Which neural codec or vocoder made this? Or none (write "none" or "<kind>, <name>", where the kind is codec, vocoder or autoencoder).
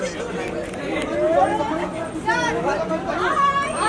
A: none